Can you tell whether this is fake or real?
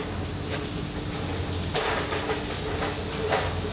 real